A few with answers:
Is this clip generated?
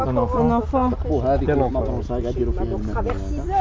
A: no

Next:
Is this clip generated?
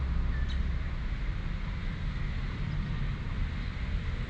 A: no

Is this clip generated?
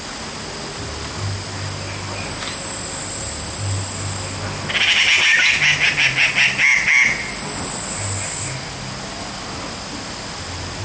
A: no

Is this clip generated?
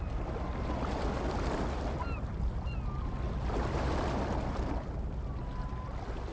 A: no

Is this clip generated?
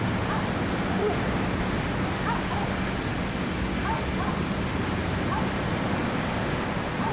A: no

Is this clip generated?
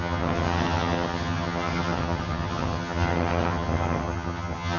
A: yes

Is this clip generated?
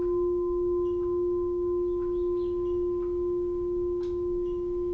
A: no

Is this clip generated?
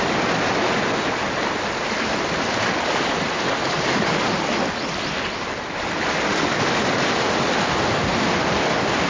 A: no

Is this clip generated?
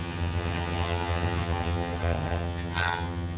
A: yes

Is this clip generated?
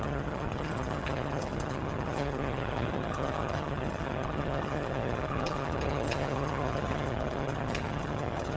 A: yes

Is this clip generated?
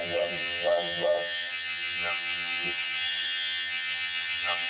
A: yes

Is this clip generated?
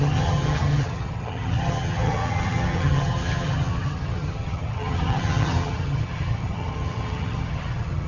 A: yes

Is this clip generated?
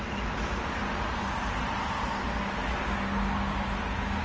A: no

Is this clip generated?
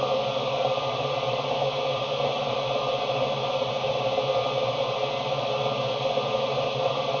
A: no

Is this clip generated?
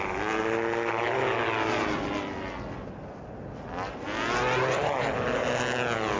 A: no